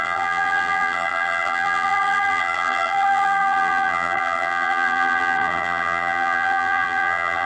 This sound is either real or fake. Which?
fake